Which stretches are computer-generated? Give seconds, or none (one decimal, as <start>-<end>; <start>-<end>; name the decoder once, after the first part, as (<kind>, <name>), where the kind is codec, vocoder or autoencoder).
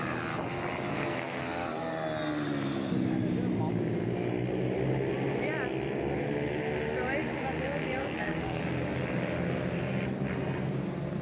0.9-1.4 (codec, SNAC); 8.0-8.6